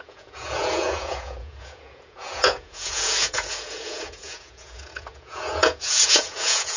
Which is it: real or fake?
fake